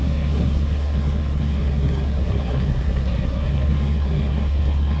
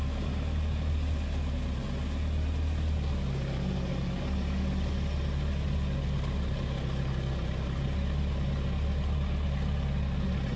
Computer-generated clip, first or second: first